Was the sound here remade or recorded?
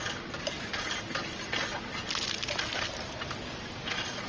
recorded